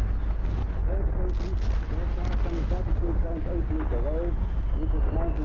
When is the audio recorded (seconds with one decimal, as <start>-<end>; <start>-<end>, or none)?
0.0-0.6; 1.1-5.4